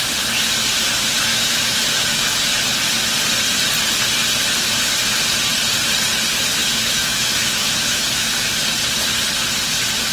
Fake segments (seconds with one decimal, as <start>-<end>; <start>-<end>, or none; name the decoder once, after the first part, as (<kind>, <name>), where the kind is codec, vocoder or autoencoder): 1.3-2.4 (autoencoder, DAC-VAE); 6.6-8.4